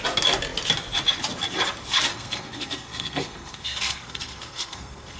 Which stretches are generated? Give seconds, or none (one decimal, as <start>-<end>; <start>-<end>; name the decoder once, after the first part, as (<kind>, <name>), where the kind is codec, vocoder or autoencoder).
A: 2.1-5.2 (codec, SNAC)